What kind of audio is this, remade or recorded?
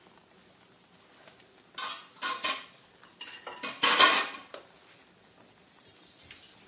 recorded